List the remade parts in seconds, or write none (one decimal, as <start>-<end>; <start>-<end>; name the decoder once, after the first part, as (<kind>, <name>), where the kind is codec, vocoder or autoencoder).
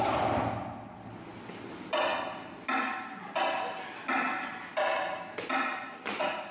none